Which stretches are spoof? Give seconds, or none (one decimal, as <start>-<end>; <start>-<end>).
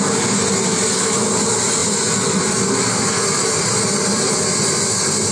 none